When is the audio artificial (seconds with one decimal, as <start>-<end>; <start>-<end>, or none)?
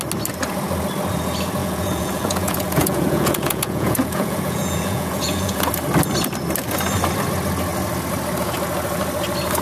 1.6-5.7